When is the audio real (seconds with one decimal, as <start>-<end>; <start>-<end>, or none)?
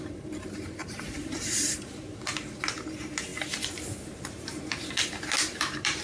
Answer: none